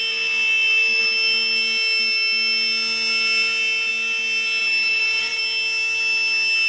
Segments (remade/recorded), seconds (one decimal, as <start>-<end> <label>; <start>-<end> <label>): 0.0-4.6 recorded; 4.6-5.4 remade; 5.4-6.7 recorded